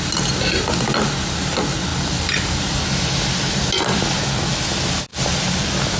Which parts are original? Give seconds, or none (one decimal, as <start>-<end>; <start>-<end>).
0.0-6.0